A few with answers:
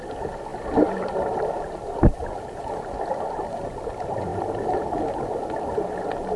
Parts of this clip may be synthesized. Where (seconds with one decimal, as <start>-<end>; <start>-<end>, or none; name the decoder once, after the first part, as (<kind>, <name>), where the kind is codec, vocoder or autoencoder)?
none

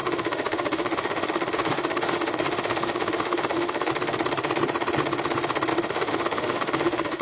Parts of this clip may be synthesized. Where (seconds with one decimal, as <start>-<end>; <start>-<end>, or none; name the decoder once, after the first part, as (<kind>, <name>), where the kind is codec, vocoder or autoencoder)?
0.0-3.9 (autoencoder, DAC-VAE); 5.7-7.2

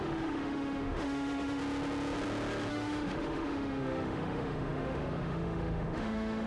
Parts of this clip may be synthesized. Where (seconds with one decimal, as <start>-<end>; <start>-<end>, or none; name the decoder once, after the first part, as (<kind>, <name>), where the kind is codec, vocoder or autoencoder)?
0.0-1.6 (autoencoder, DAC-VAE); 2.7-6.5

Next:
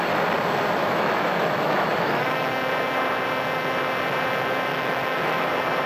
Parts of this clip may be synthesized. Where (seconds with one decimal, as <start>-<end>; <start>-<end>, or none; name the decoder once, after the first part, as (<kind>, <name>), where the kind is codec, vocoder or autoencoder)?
0.8-2.5 (autoencoder, DAC-VAE); 4.7-5.5